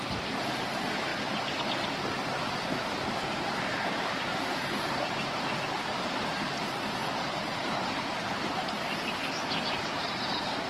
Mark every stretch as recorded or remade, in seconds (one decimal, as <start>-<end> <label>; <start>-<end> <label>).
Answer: 0.0-1.1 remade; 1.1-2.9 recorded; 2.9-7.0 remade; 7.0-7.9 recorded; 7.9-10.7 remade